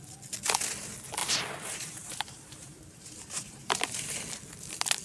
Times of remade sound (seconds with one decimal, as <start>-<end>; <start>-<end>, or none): 1.2-4.2